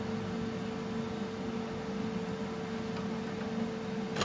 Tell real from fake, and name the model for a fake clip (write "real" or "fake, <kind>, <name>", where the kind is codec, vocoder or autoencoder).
real